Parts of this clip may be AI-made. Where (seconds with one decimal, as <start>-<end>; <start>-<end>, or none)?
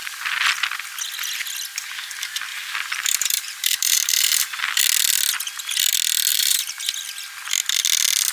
2.5-4.8; 6.3-6.8